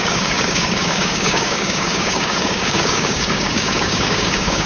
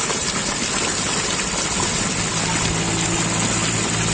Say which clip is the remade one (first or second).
first